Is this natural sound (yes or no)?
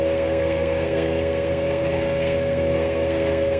no